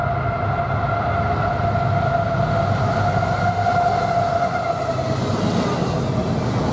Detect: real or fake real